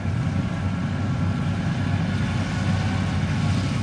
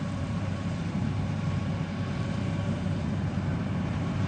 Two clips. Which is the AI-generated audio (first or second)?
second